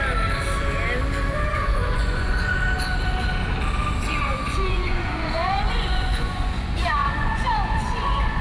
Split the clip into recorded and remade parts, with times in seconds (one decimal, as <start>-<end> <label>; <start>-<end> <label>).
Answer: 0.0-1.5 recorded; 1.5-2.6 remade; 2.6-4.3 recorded; 4.3-8.4 remade